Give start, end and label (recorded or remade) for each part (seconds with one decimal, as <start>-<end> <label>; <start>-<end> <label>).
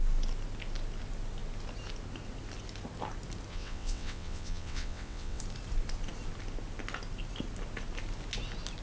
0.0-3.5 recorded; 3.5-5.4 remade; 5.4-8.8 recorded